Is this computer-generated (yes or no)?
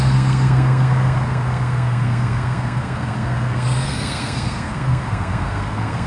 yes